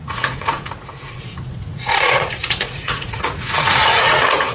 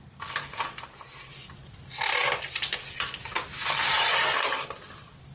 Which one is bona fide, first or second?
second